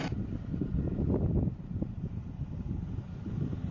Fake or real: real